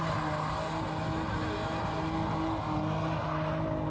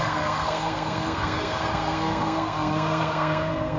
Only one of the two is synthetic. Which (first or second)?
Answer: second